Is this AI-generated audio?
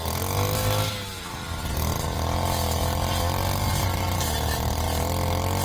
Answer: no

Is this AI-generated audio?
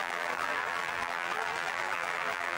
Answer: yes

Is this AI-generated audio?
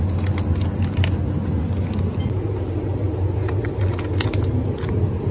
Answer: no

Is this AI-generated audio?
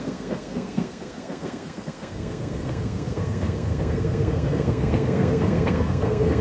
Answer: yes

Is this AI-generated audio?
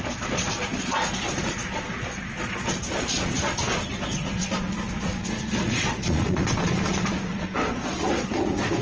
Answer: yes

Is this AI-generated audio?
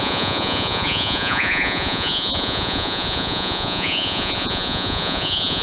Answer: yes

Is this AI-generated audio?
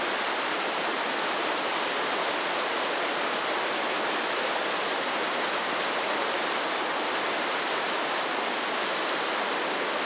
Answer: no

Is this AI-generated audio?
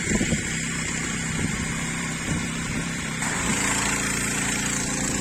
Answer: yes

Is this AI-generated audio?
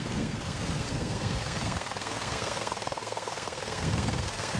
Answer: yes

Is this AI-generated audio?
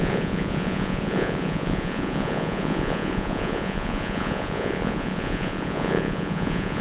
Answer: yes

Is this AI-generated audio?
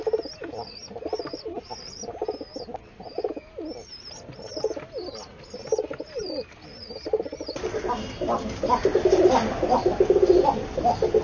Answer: no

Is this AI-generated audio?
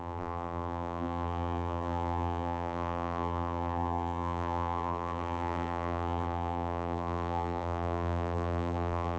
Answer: yes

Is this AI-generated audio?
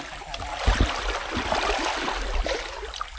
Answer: no